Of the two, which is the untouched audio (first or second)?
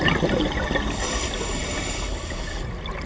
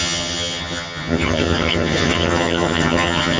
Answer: first